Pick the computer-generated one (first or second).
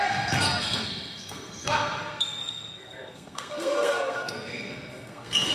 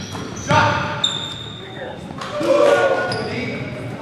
first